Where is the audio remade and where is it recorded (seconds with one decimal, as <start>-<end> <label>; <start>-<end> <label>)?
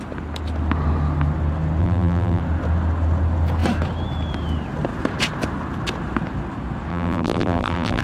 0.0-1.8 recorded; 1.8-2.4 remade; 2.4-6.9 recorded; 6.9-8.0 remade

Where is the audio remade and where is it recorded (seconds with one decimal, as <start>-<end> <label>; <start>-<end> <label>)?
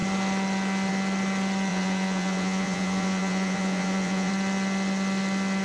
0.0-1.7 recorded; 1.7-4.3 remade; 4.3-5.6 recorded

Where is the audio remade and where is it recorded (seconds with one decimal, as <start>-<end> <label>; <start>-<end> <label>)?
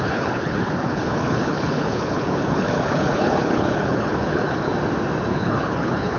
0.0-4.7 remade; 4.7-5.3 recorded; 5.3-6.2 remade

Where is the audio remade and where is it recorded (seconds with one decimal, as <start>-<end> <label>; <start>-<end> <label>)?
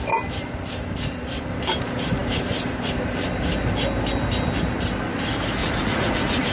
0.0-5.6 recorded; 5.6-6.5 remade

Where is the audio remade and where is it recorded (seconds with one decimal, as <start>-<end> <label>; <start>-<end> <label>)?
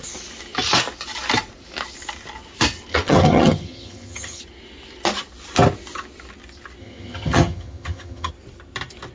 0.0-2.9 recorded; 2.9-4.4 remade; 4.4-6.8 recorded; 6.8-8.3 remade; 8.3-9.1 recorded